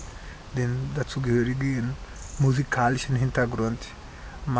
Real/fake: real